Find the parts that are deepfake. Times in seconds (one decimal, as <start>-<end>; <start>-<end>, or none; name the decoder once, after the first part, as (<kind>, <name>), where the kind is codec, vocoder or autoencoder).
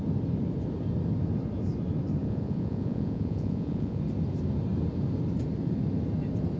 2.2-4.0 (vocoder, Vocos)